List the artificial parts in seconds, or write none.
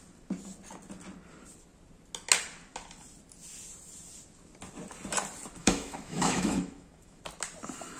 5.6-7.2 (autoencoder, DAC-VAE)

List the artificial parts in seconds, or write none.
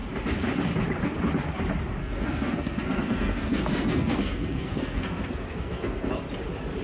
2.0-6.1 (codec, SNAC)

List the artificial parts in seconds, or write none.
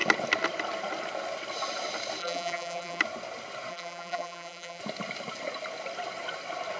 2.2-3.0 (vocoder, BigVGAN v2); 3.7-4.8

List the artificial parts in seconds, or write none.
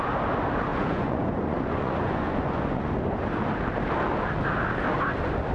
0.7-2.9 (vocoder, Vocos)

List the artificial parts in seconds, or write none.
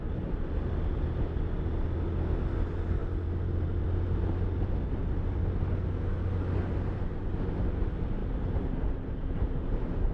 8.2-10.1 (vocoder, BigVGAN v2)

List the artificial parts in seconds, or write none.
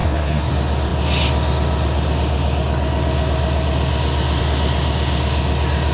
0.0-0.5 (codec, SNAC)